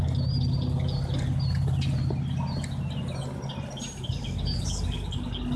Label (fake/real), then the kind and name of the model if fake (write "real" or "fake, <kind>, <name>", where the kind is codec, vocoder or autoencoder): real